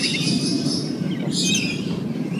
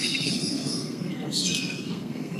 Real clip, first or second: first